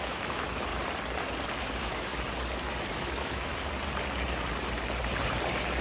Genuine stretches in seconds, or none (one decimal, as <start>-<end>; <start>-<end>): 0.7-1.6; 2.1-2.9; 3.5-5.8